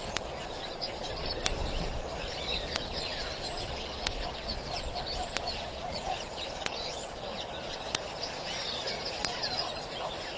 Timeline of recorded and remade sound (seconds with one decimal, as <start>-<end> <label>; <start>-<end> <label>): 0.0-10.4 remade